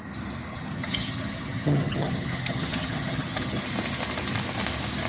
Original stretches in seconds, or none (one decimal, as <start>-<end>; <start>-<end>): 0.0-0.5; 3.6-5.1